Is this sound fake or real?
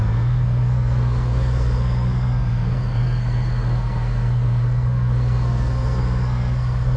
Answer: fake